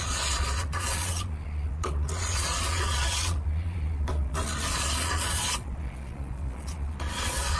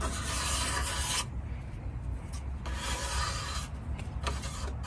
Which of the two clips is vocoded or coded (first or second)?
first